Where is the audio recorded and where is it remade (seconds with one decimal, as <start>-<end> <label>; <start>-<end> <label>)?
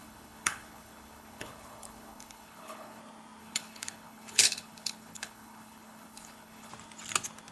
0.0-3.0 remade; 3.0-3.4 recorded; 3.4-6.7 remade; 6.7-7.5 recorded